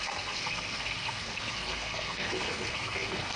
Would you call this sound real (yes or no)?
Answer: no